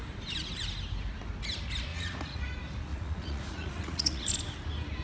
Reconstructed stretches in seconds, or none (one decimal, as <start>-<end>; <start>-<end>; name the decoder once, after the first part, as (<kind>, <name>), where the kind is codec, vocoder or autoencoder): 1.9-2.4 (vocoder, Vocos); 2.9-4.3